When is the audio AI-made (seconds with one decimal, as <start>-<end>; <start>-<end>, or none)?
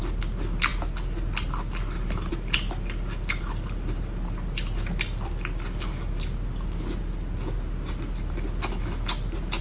none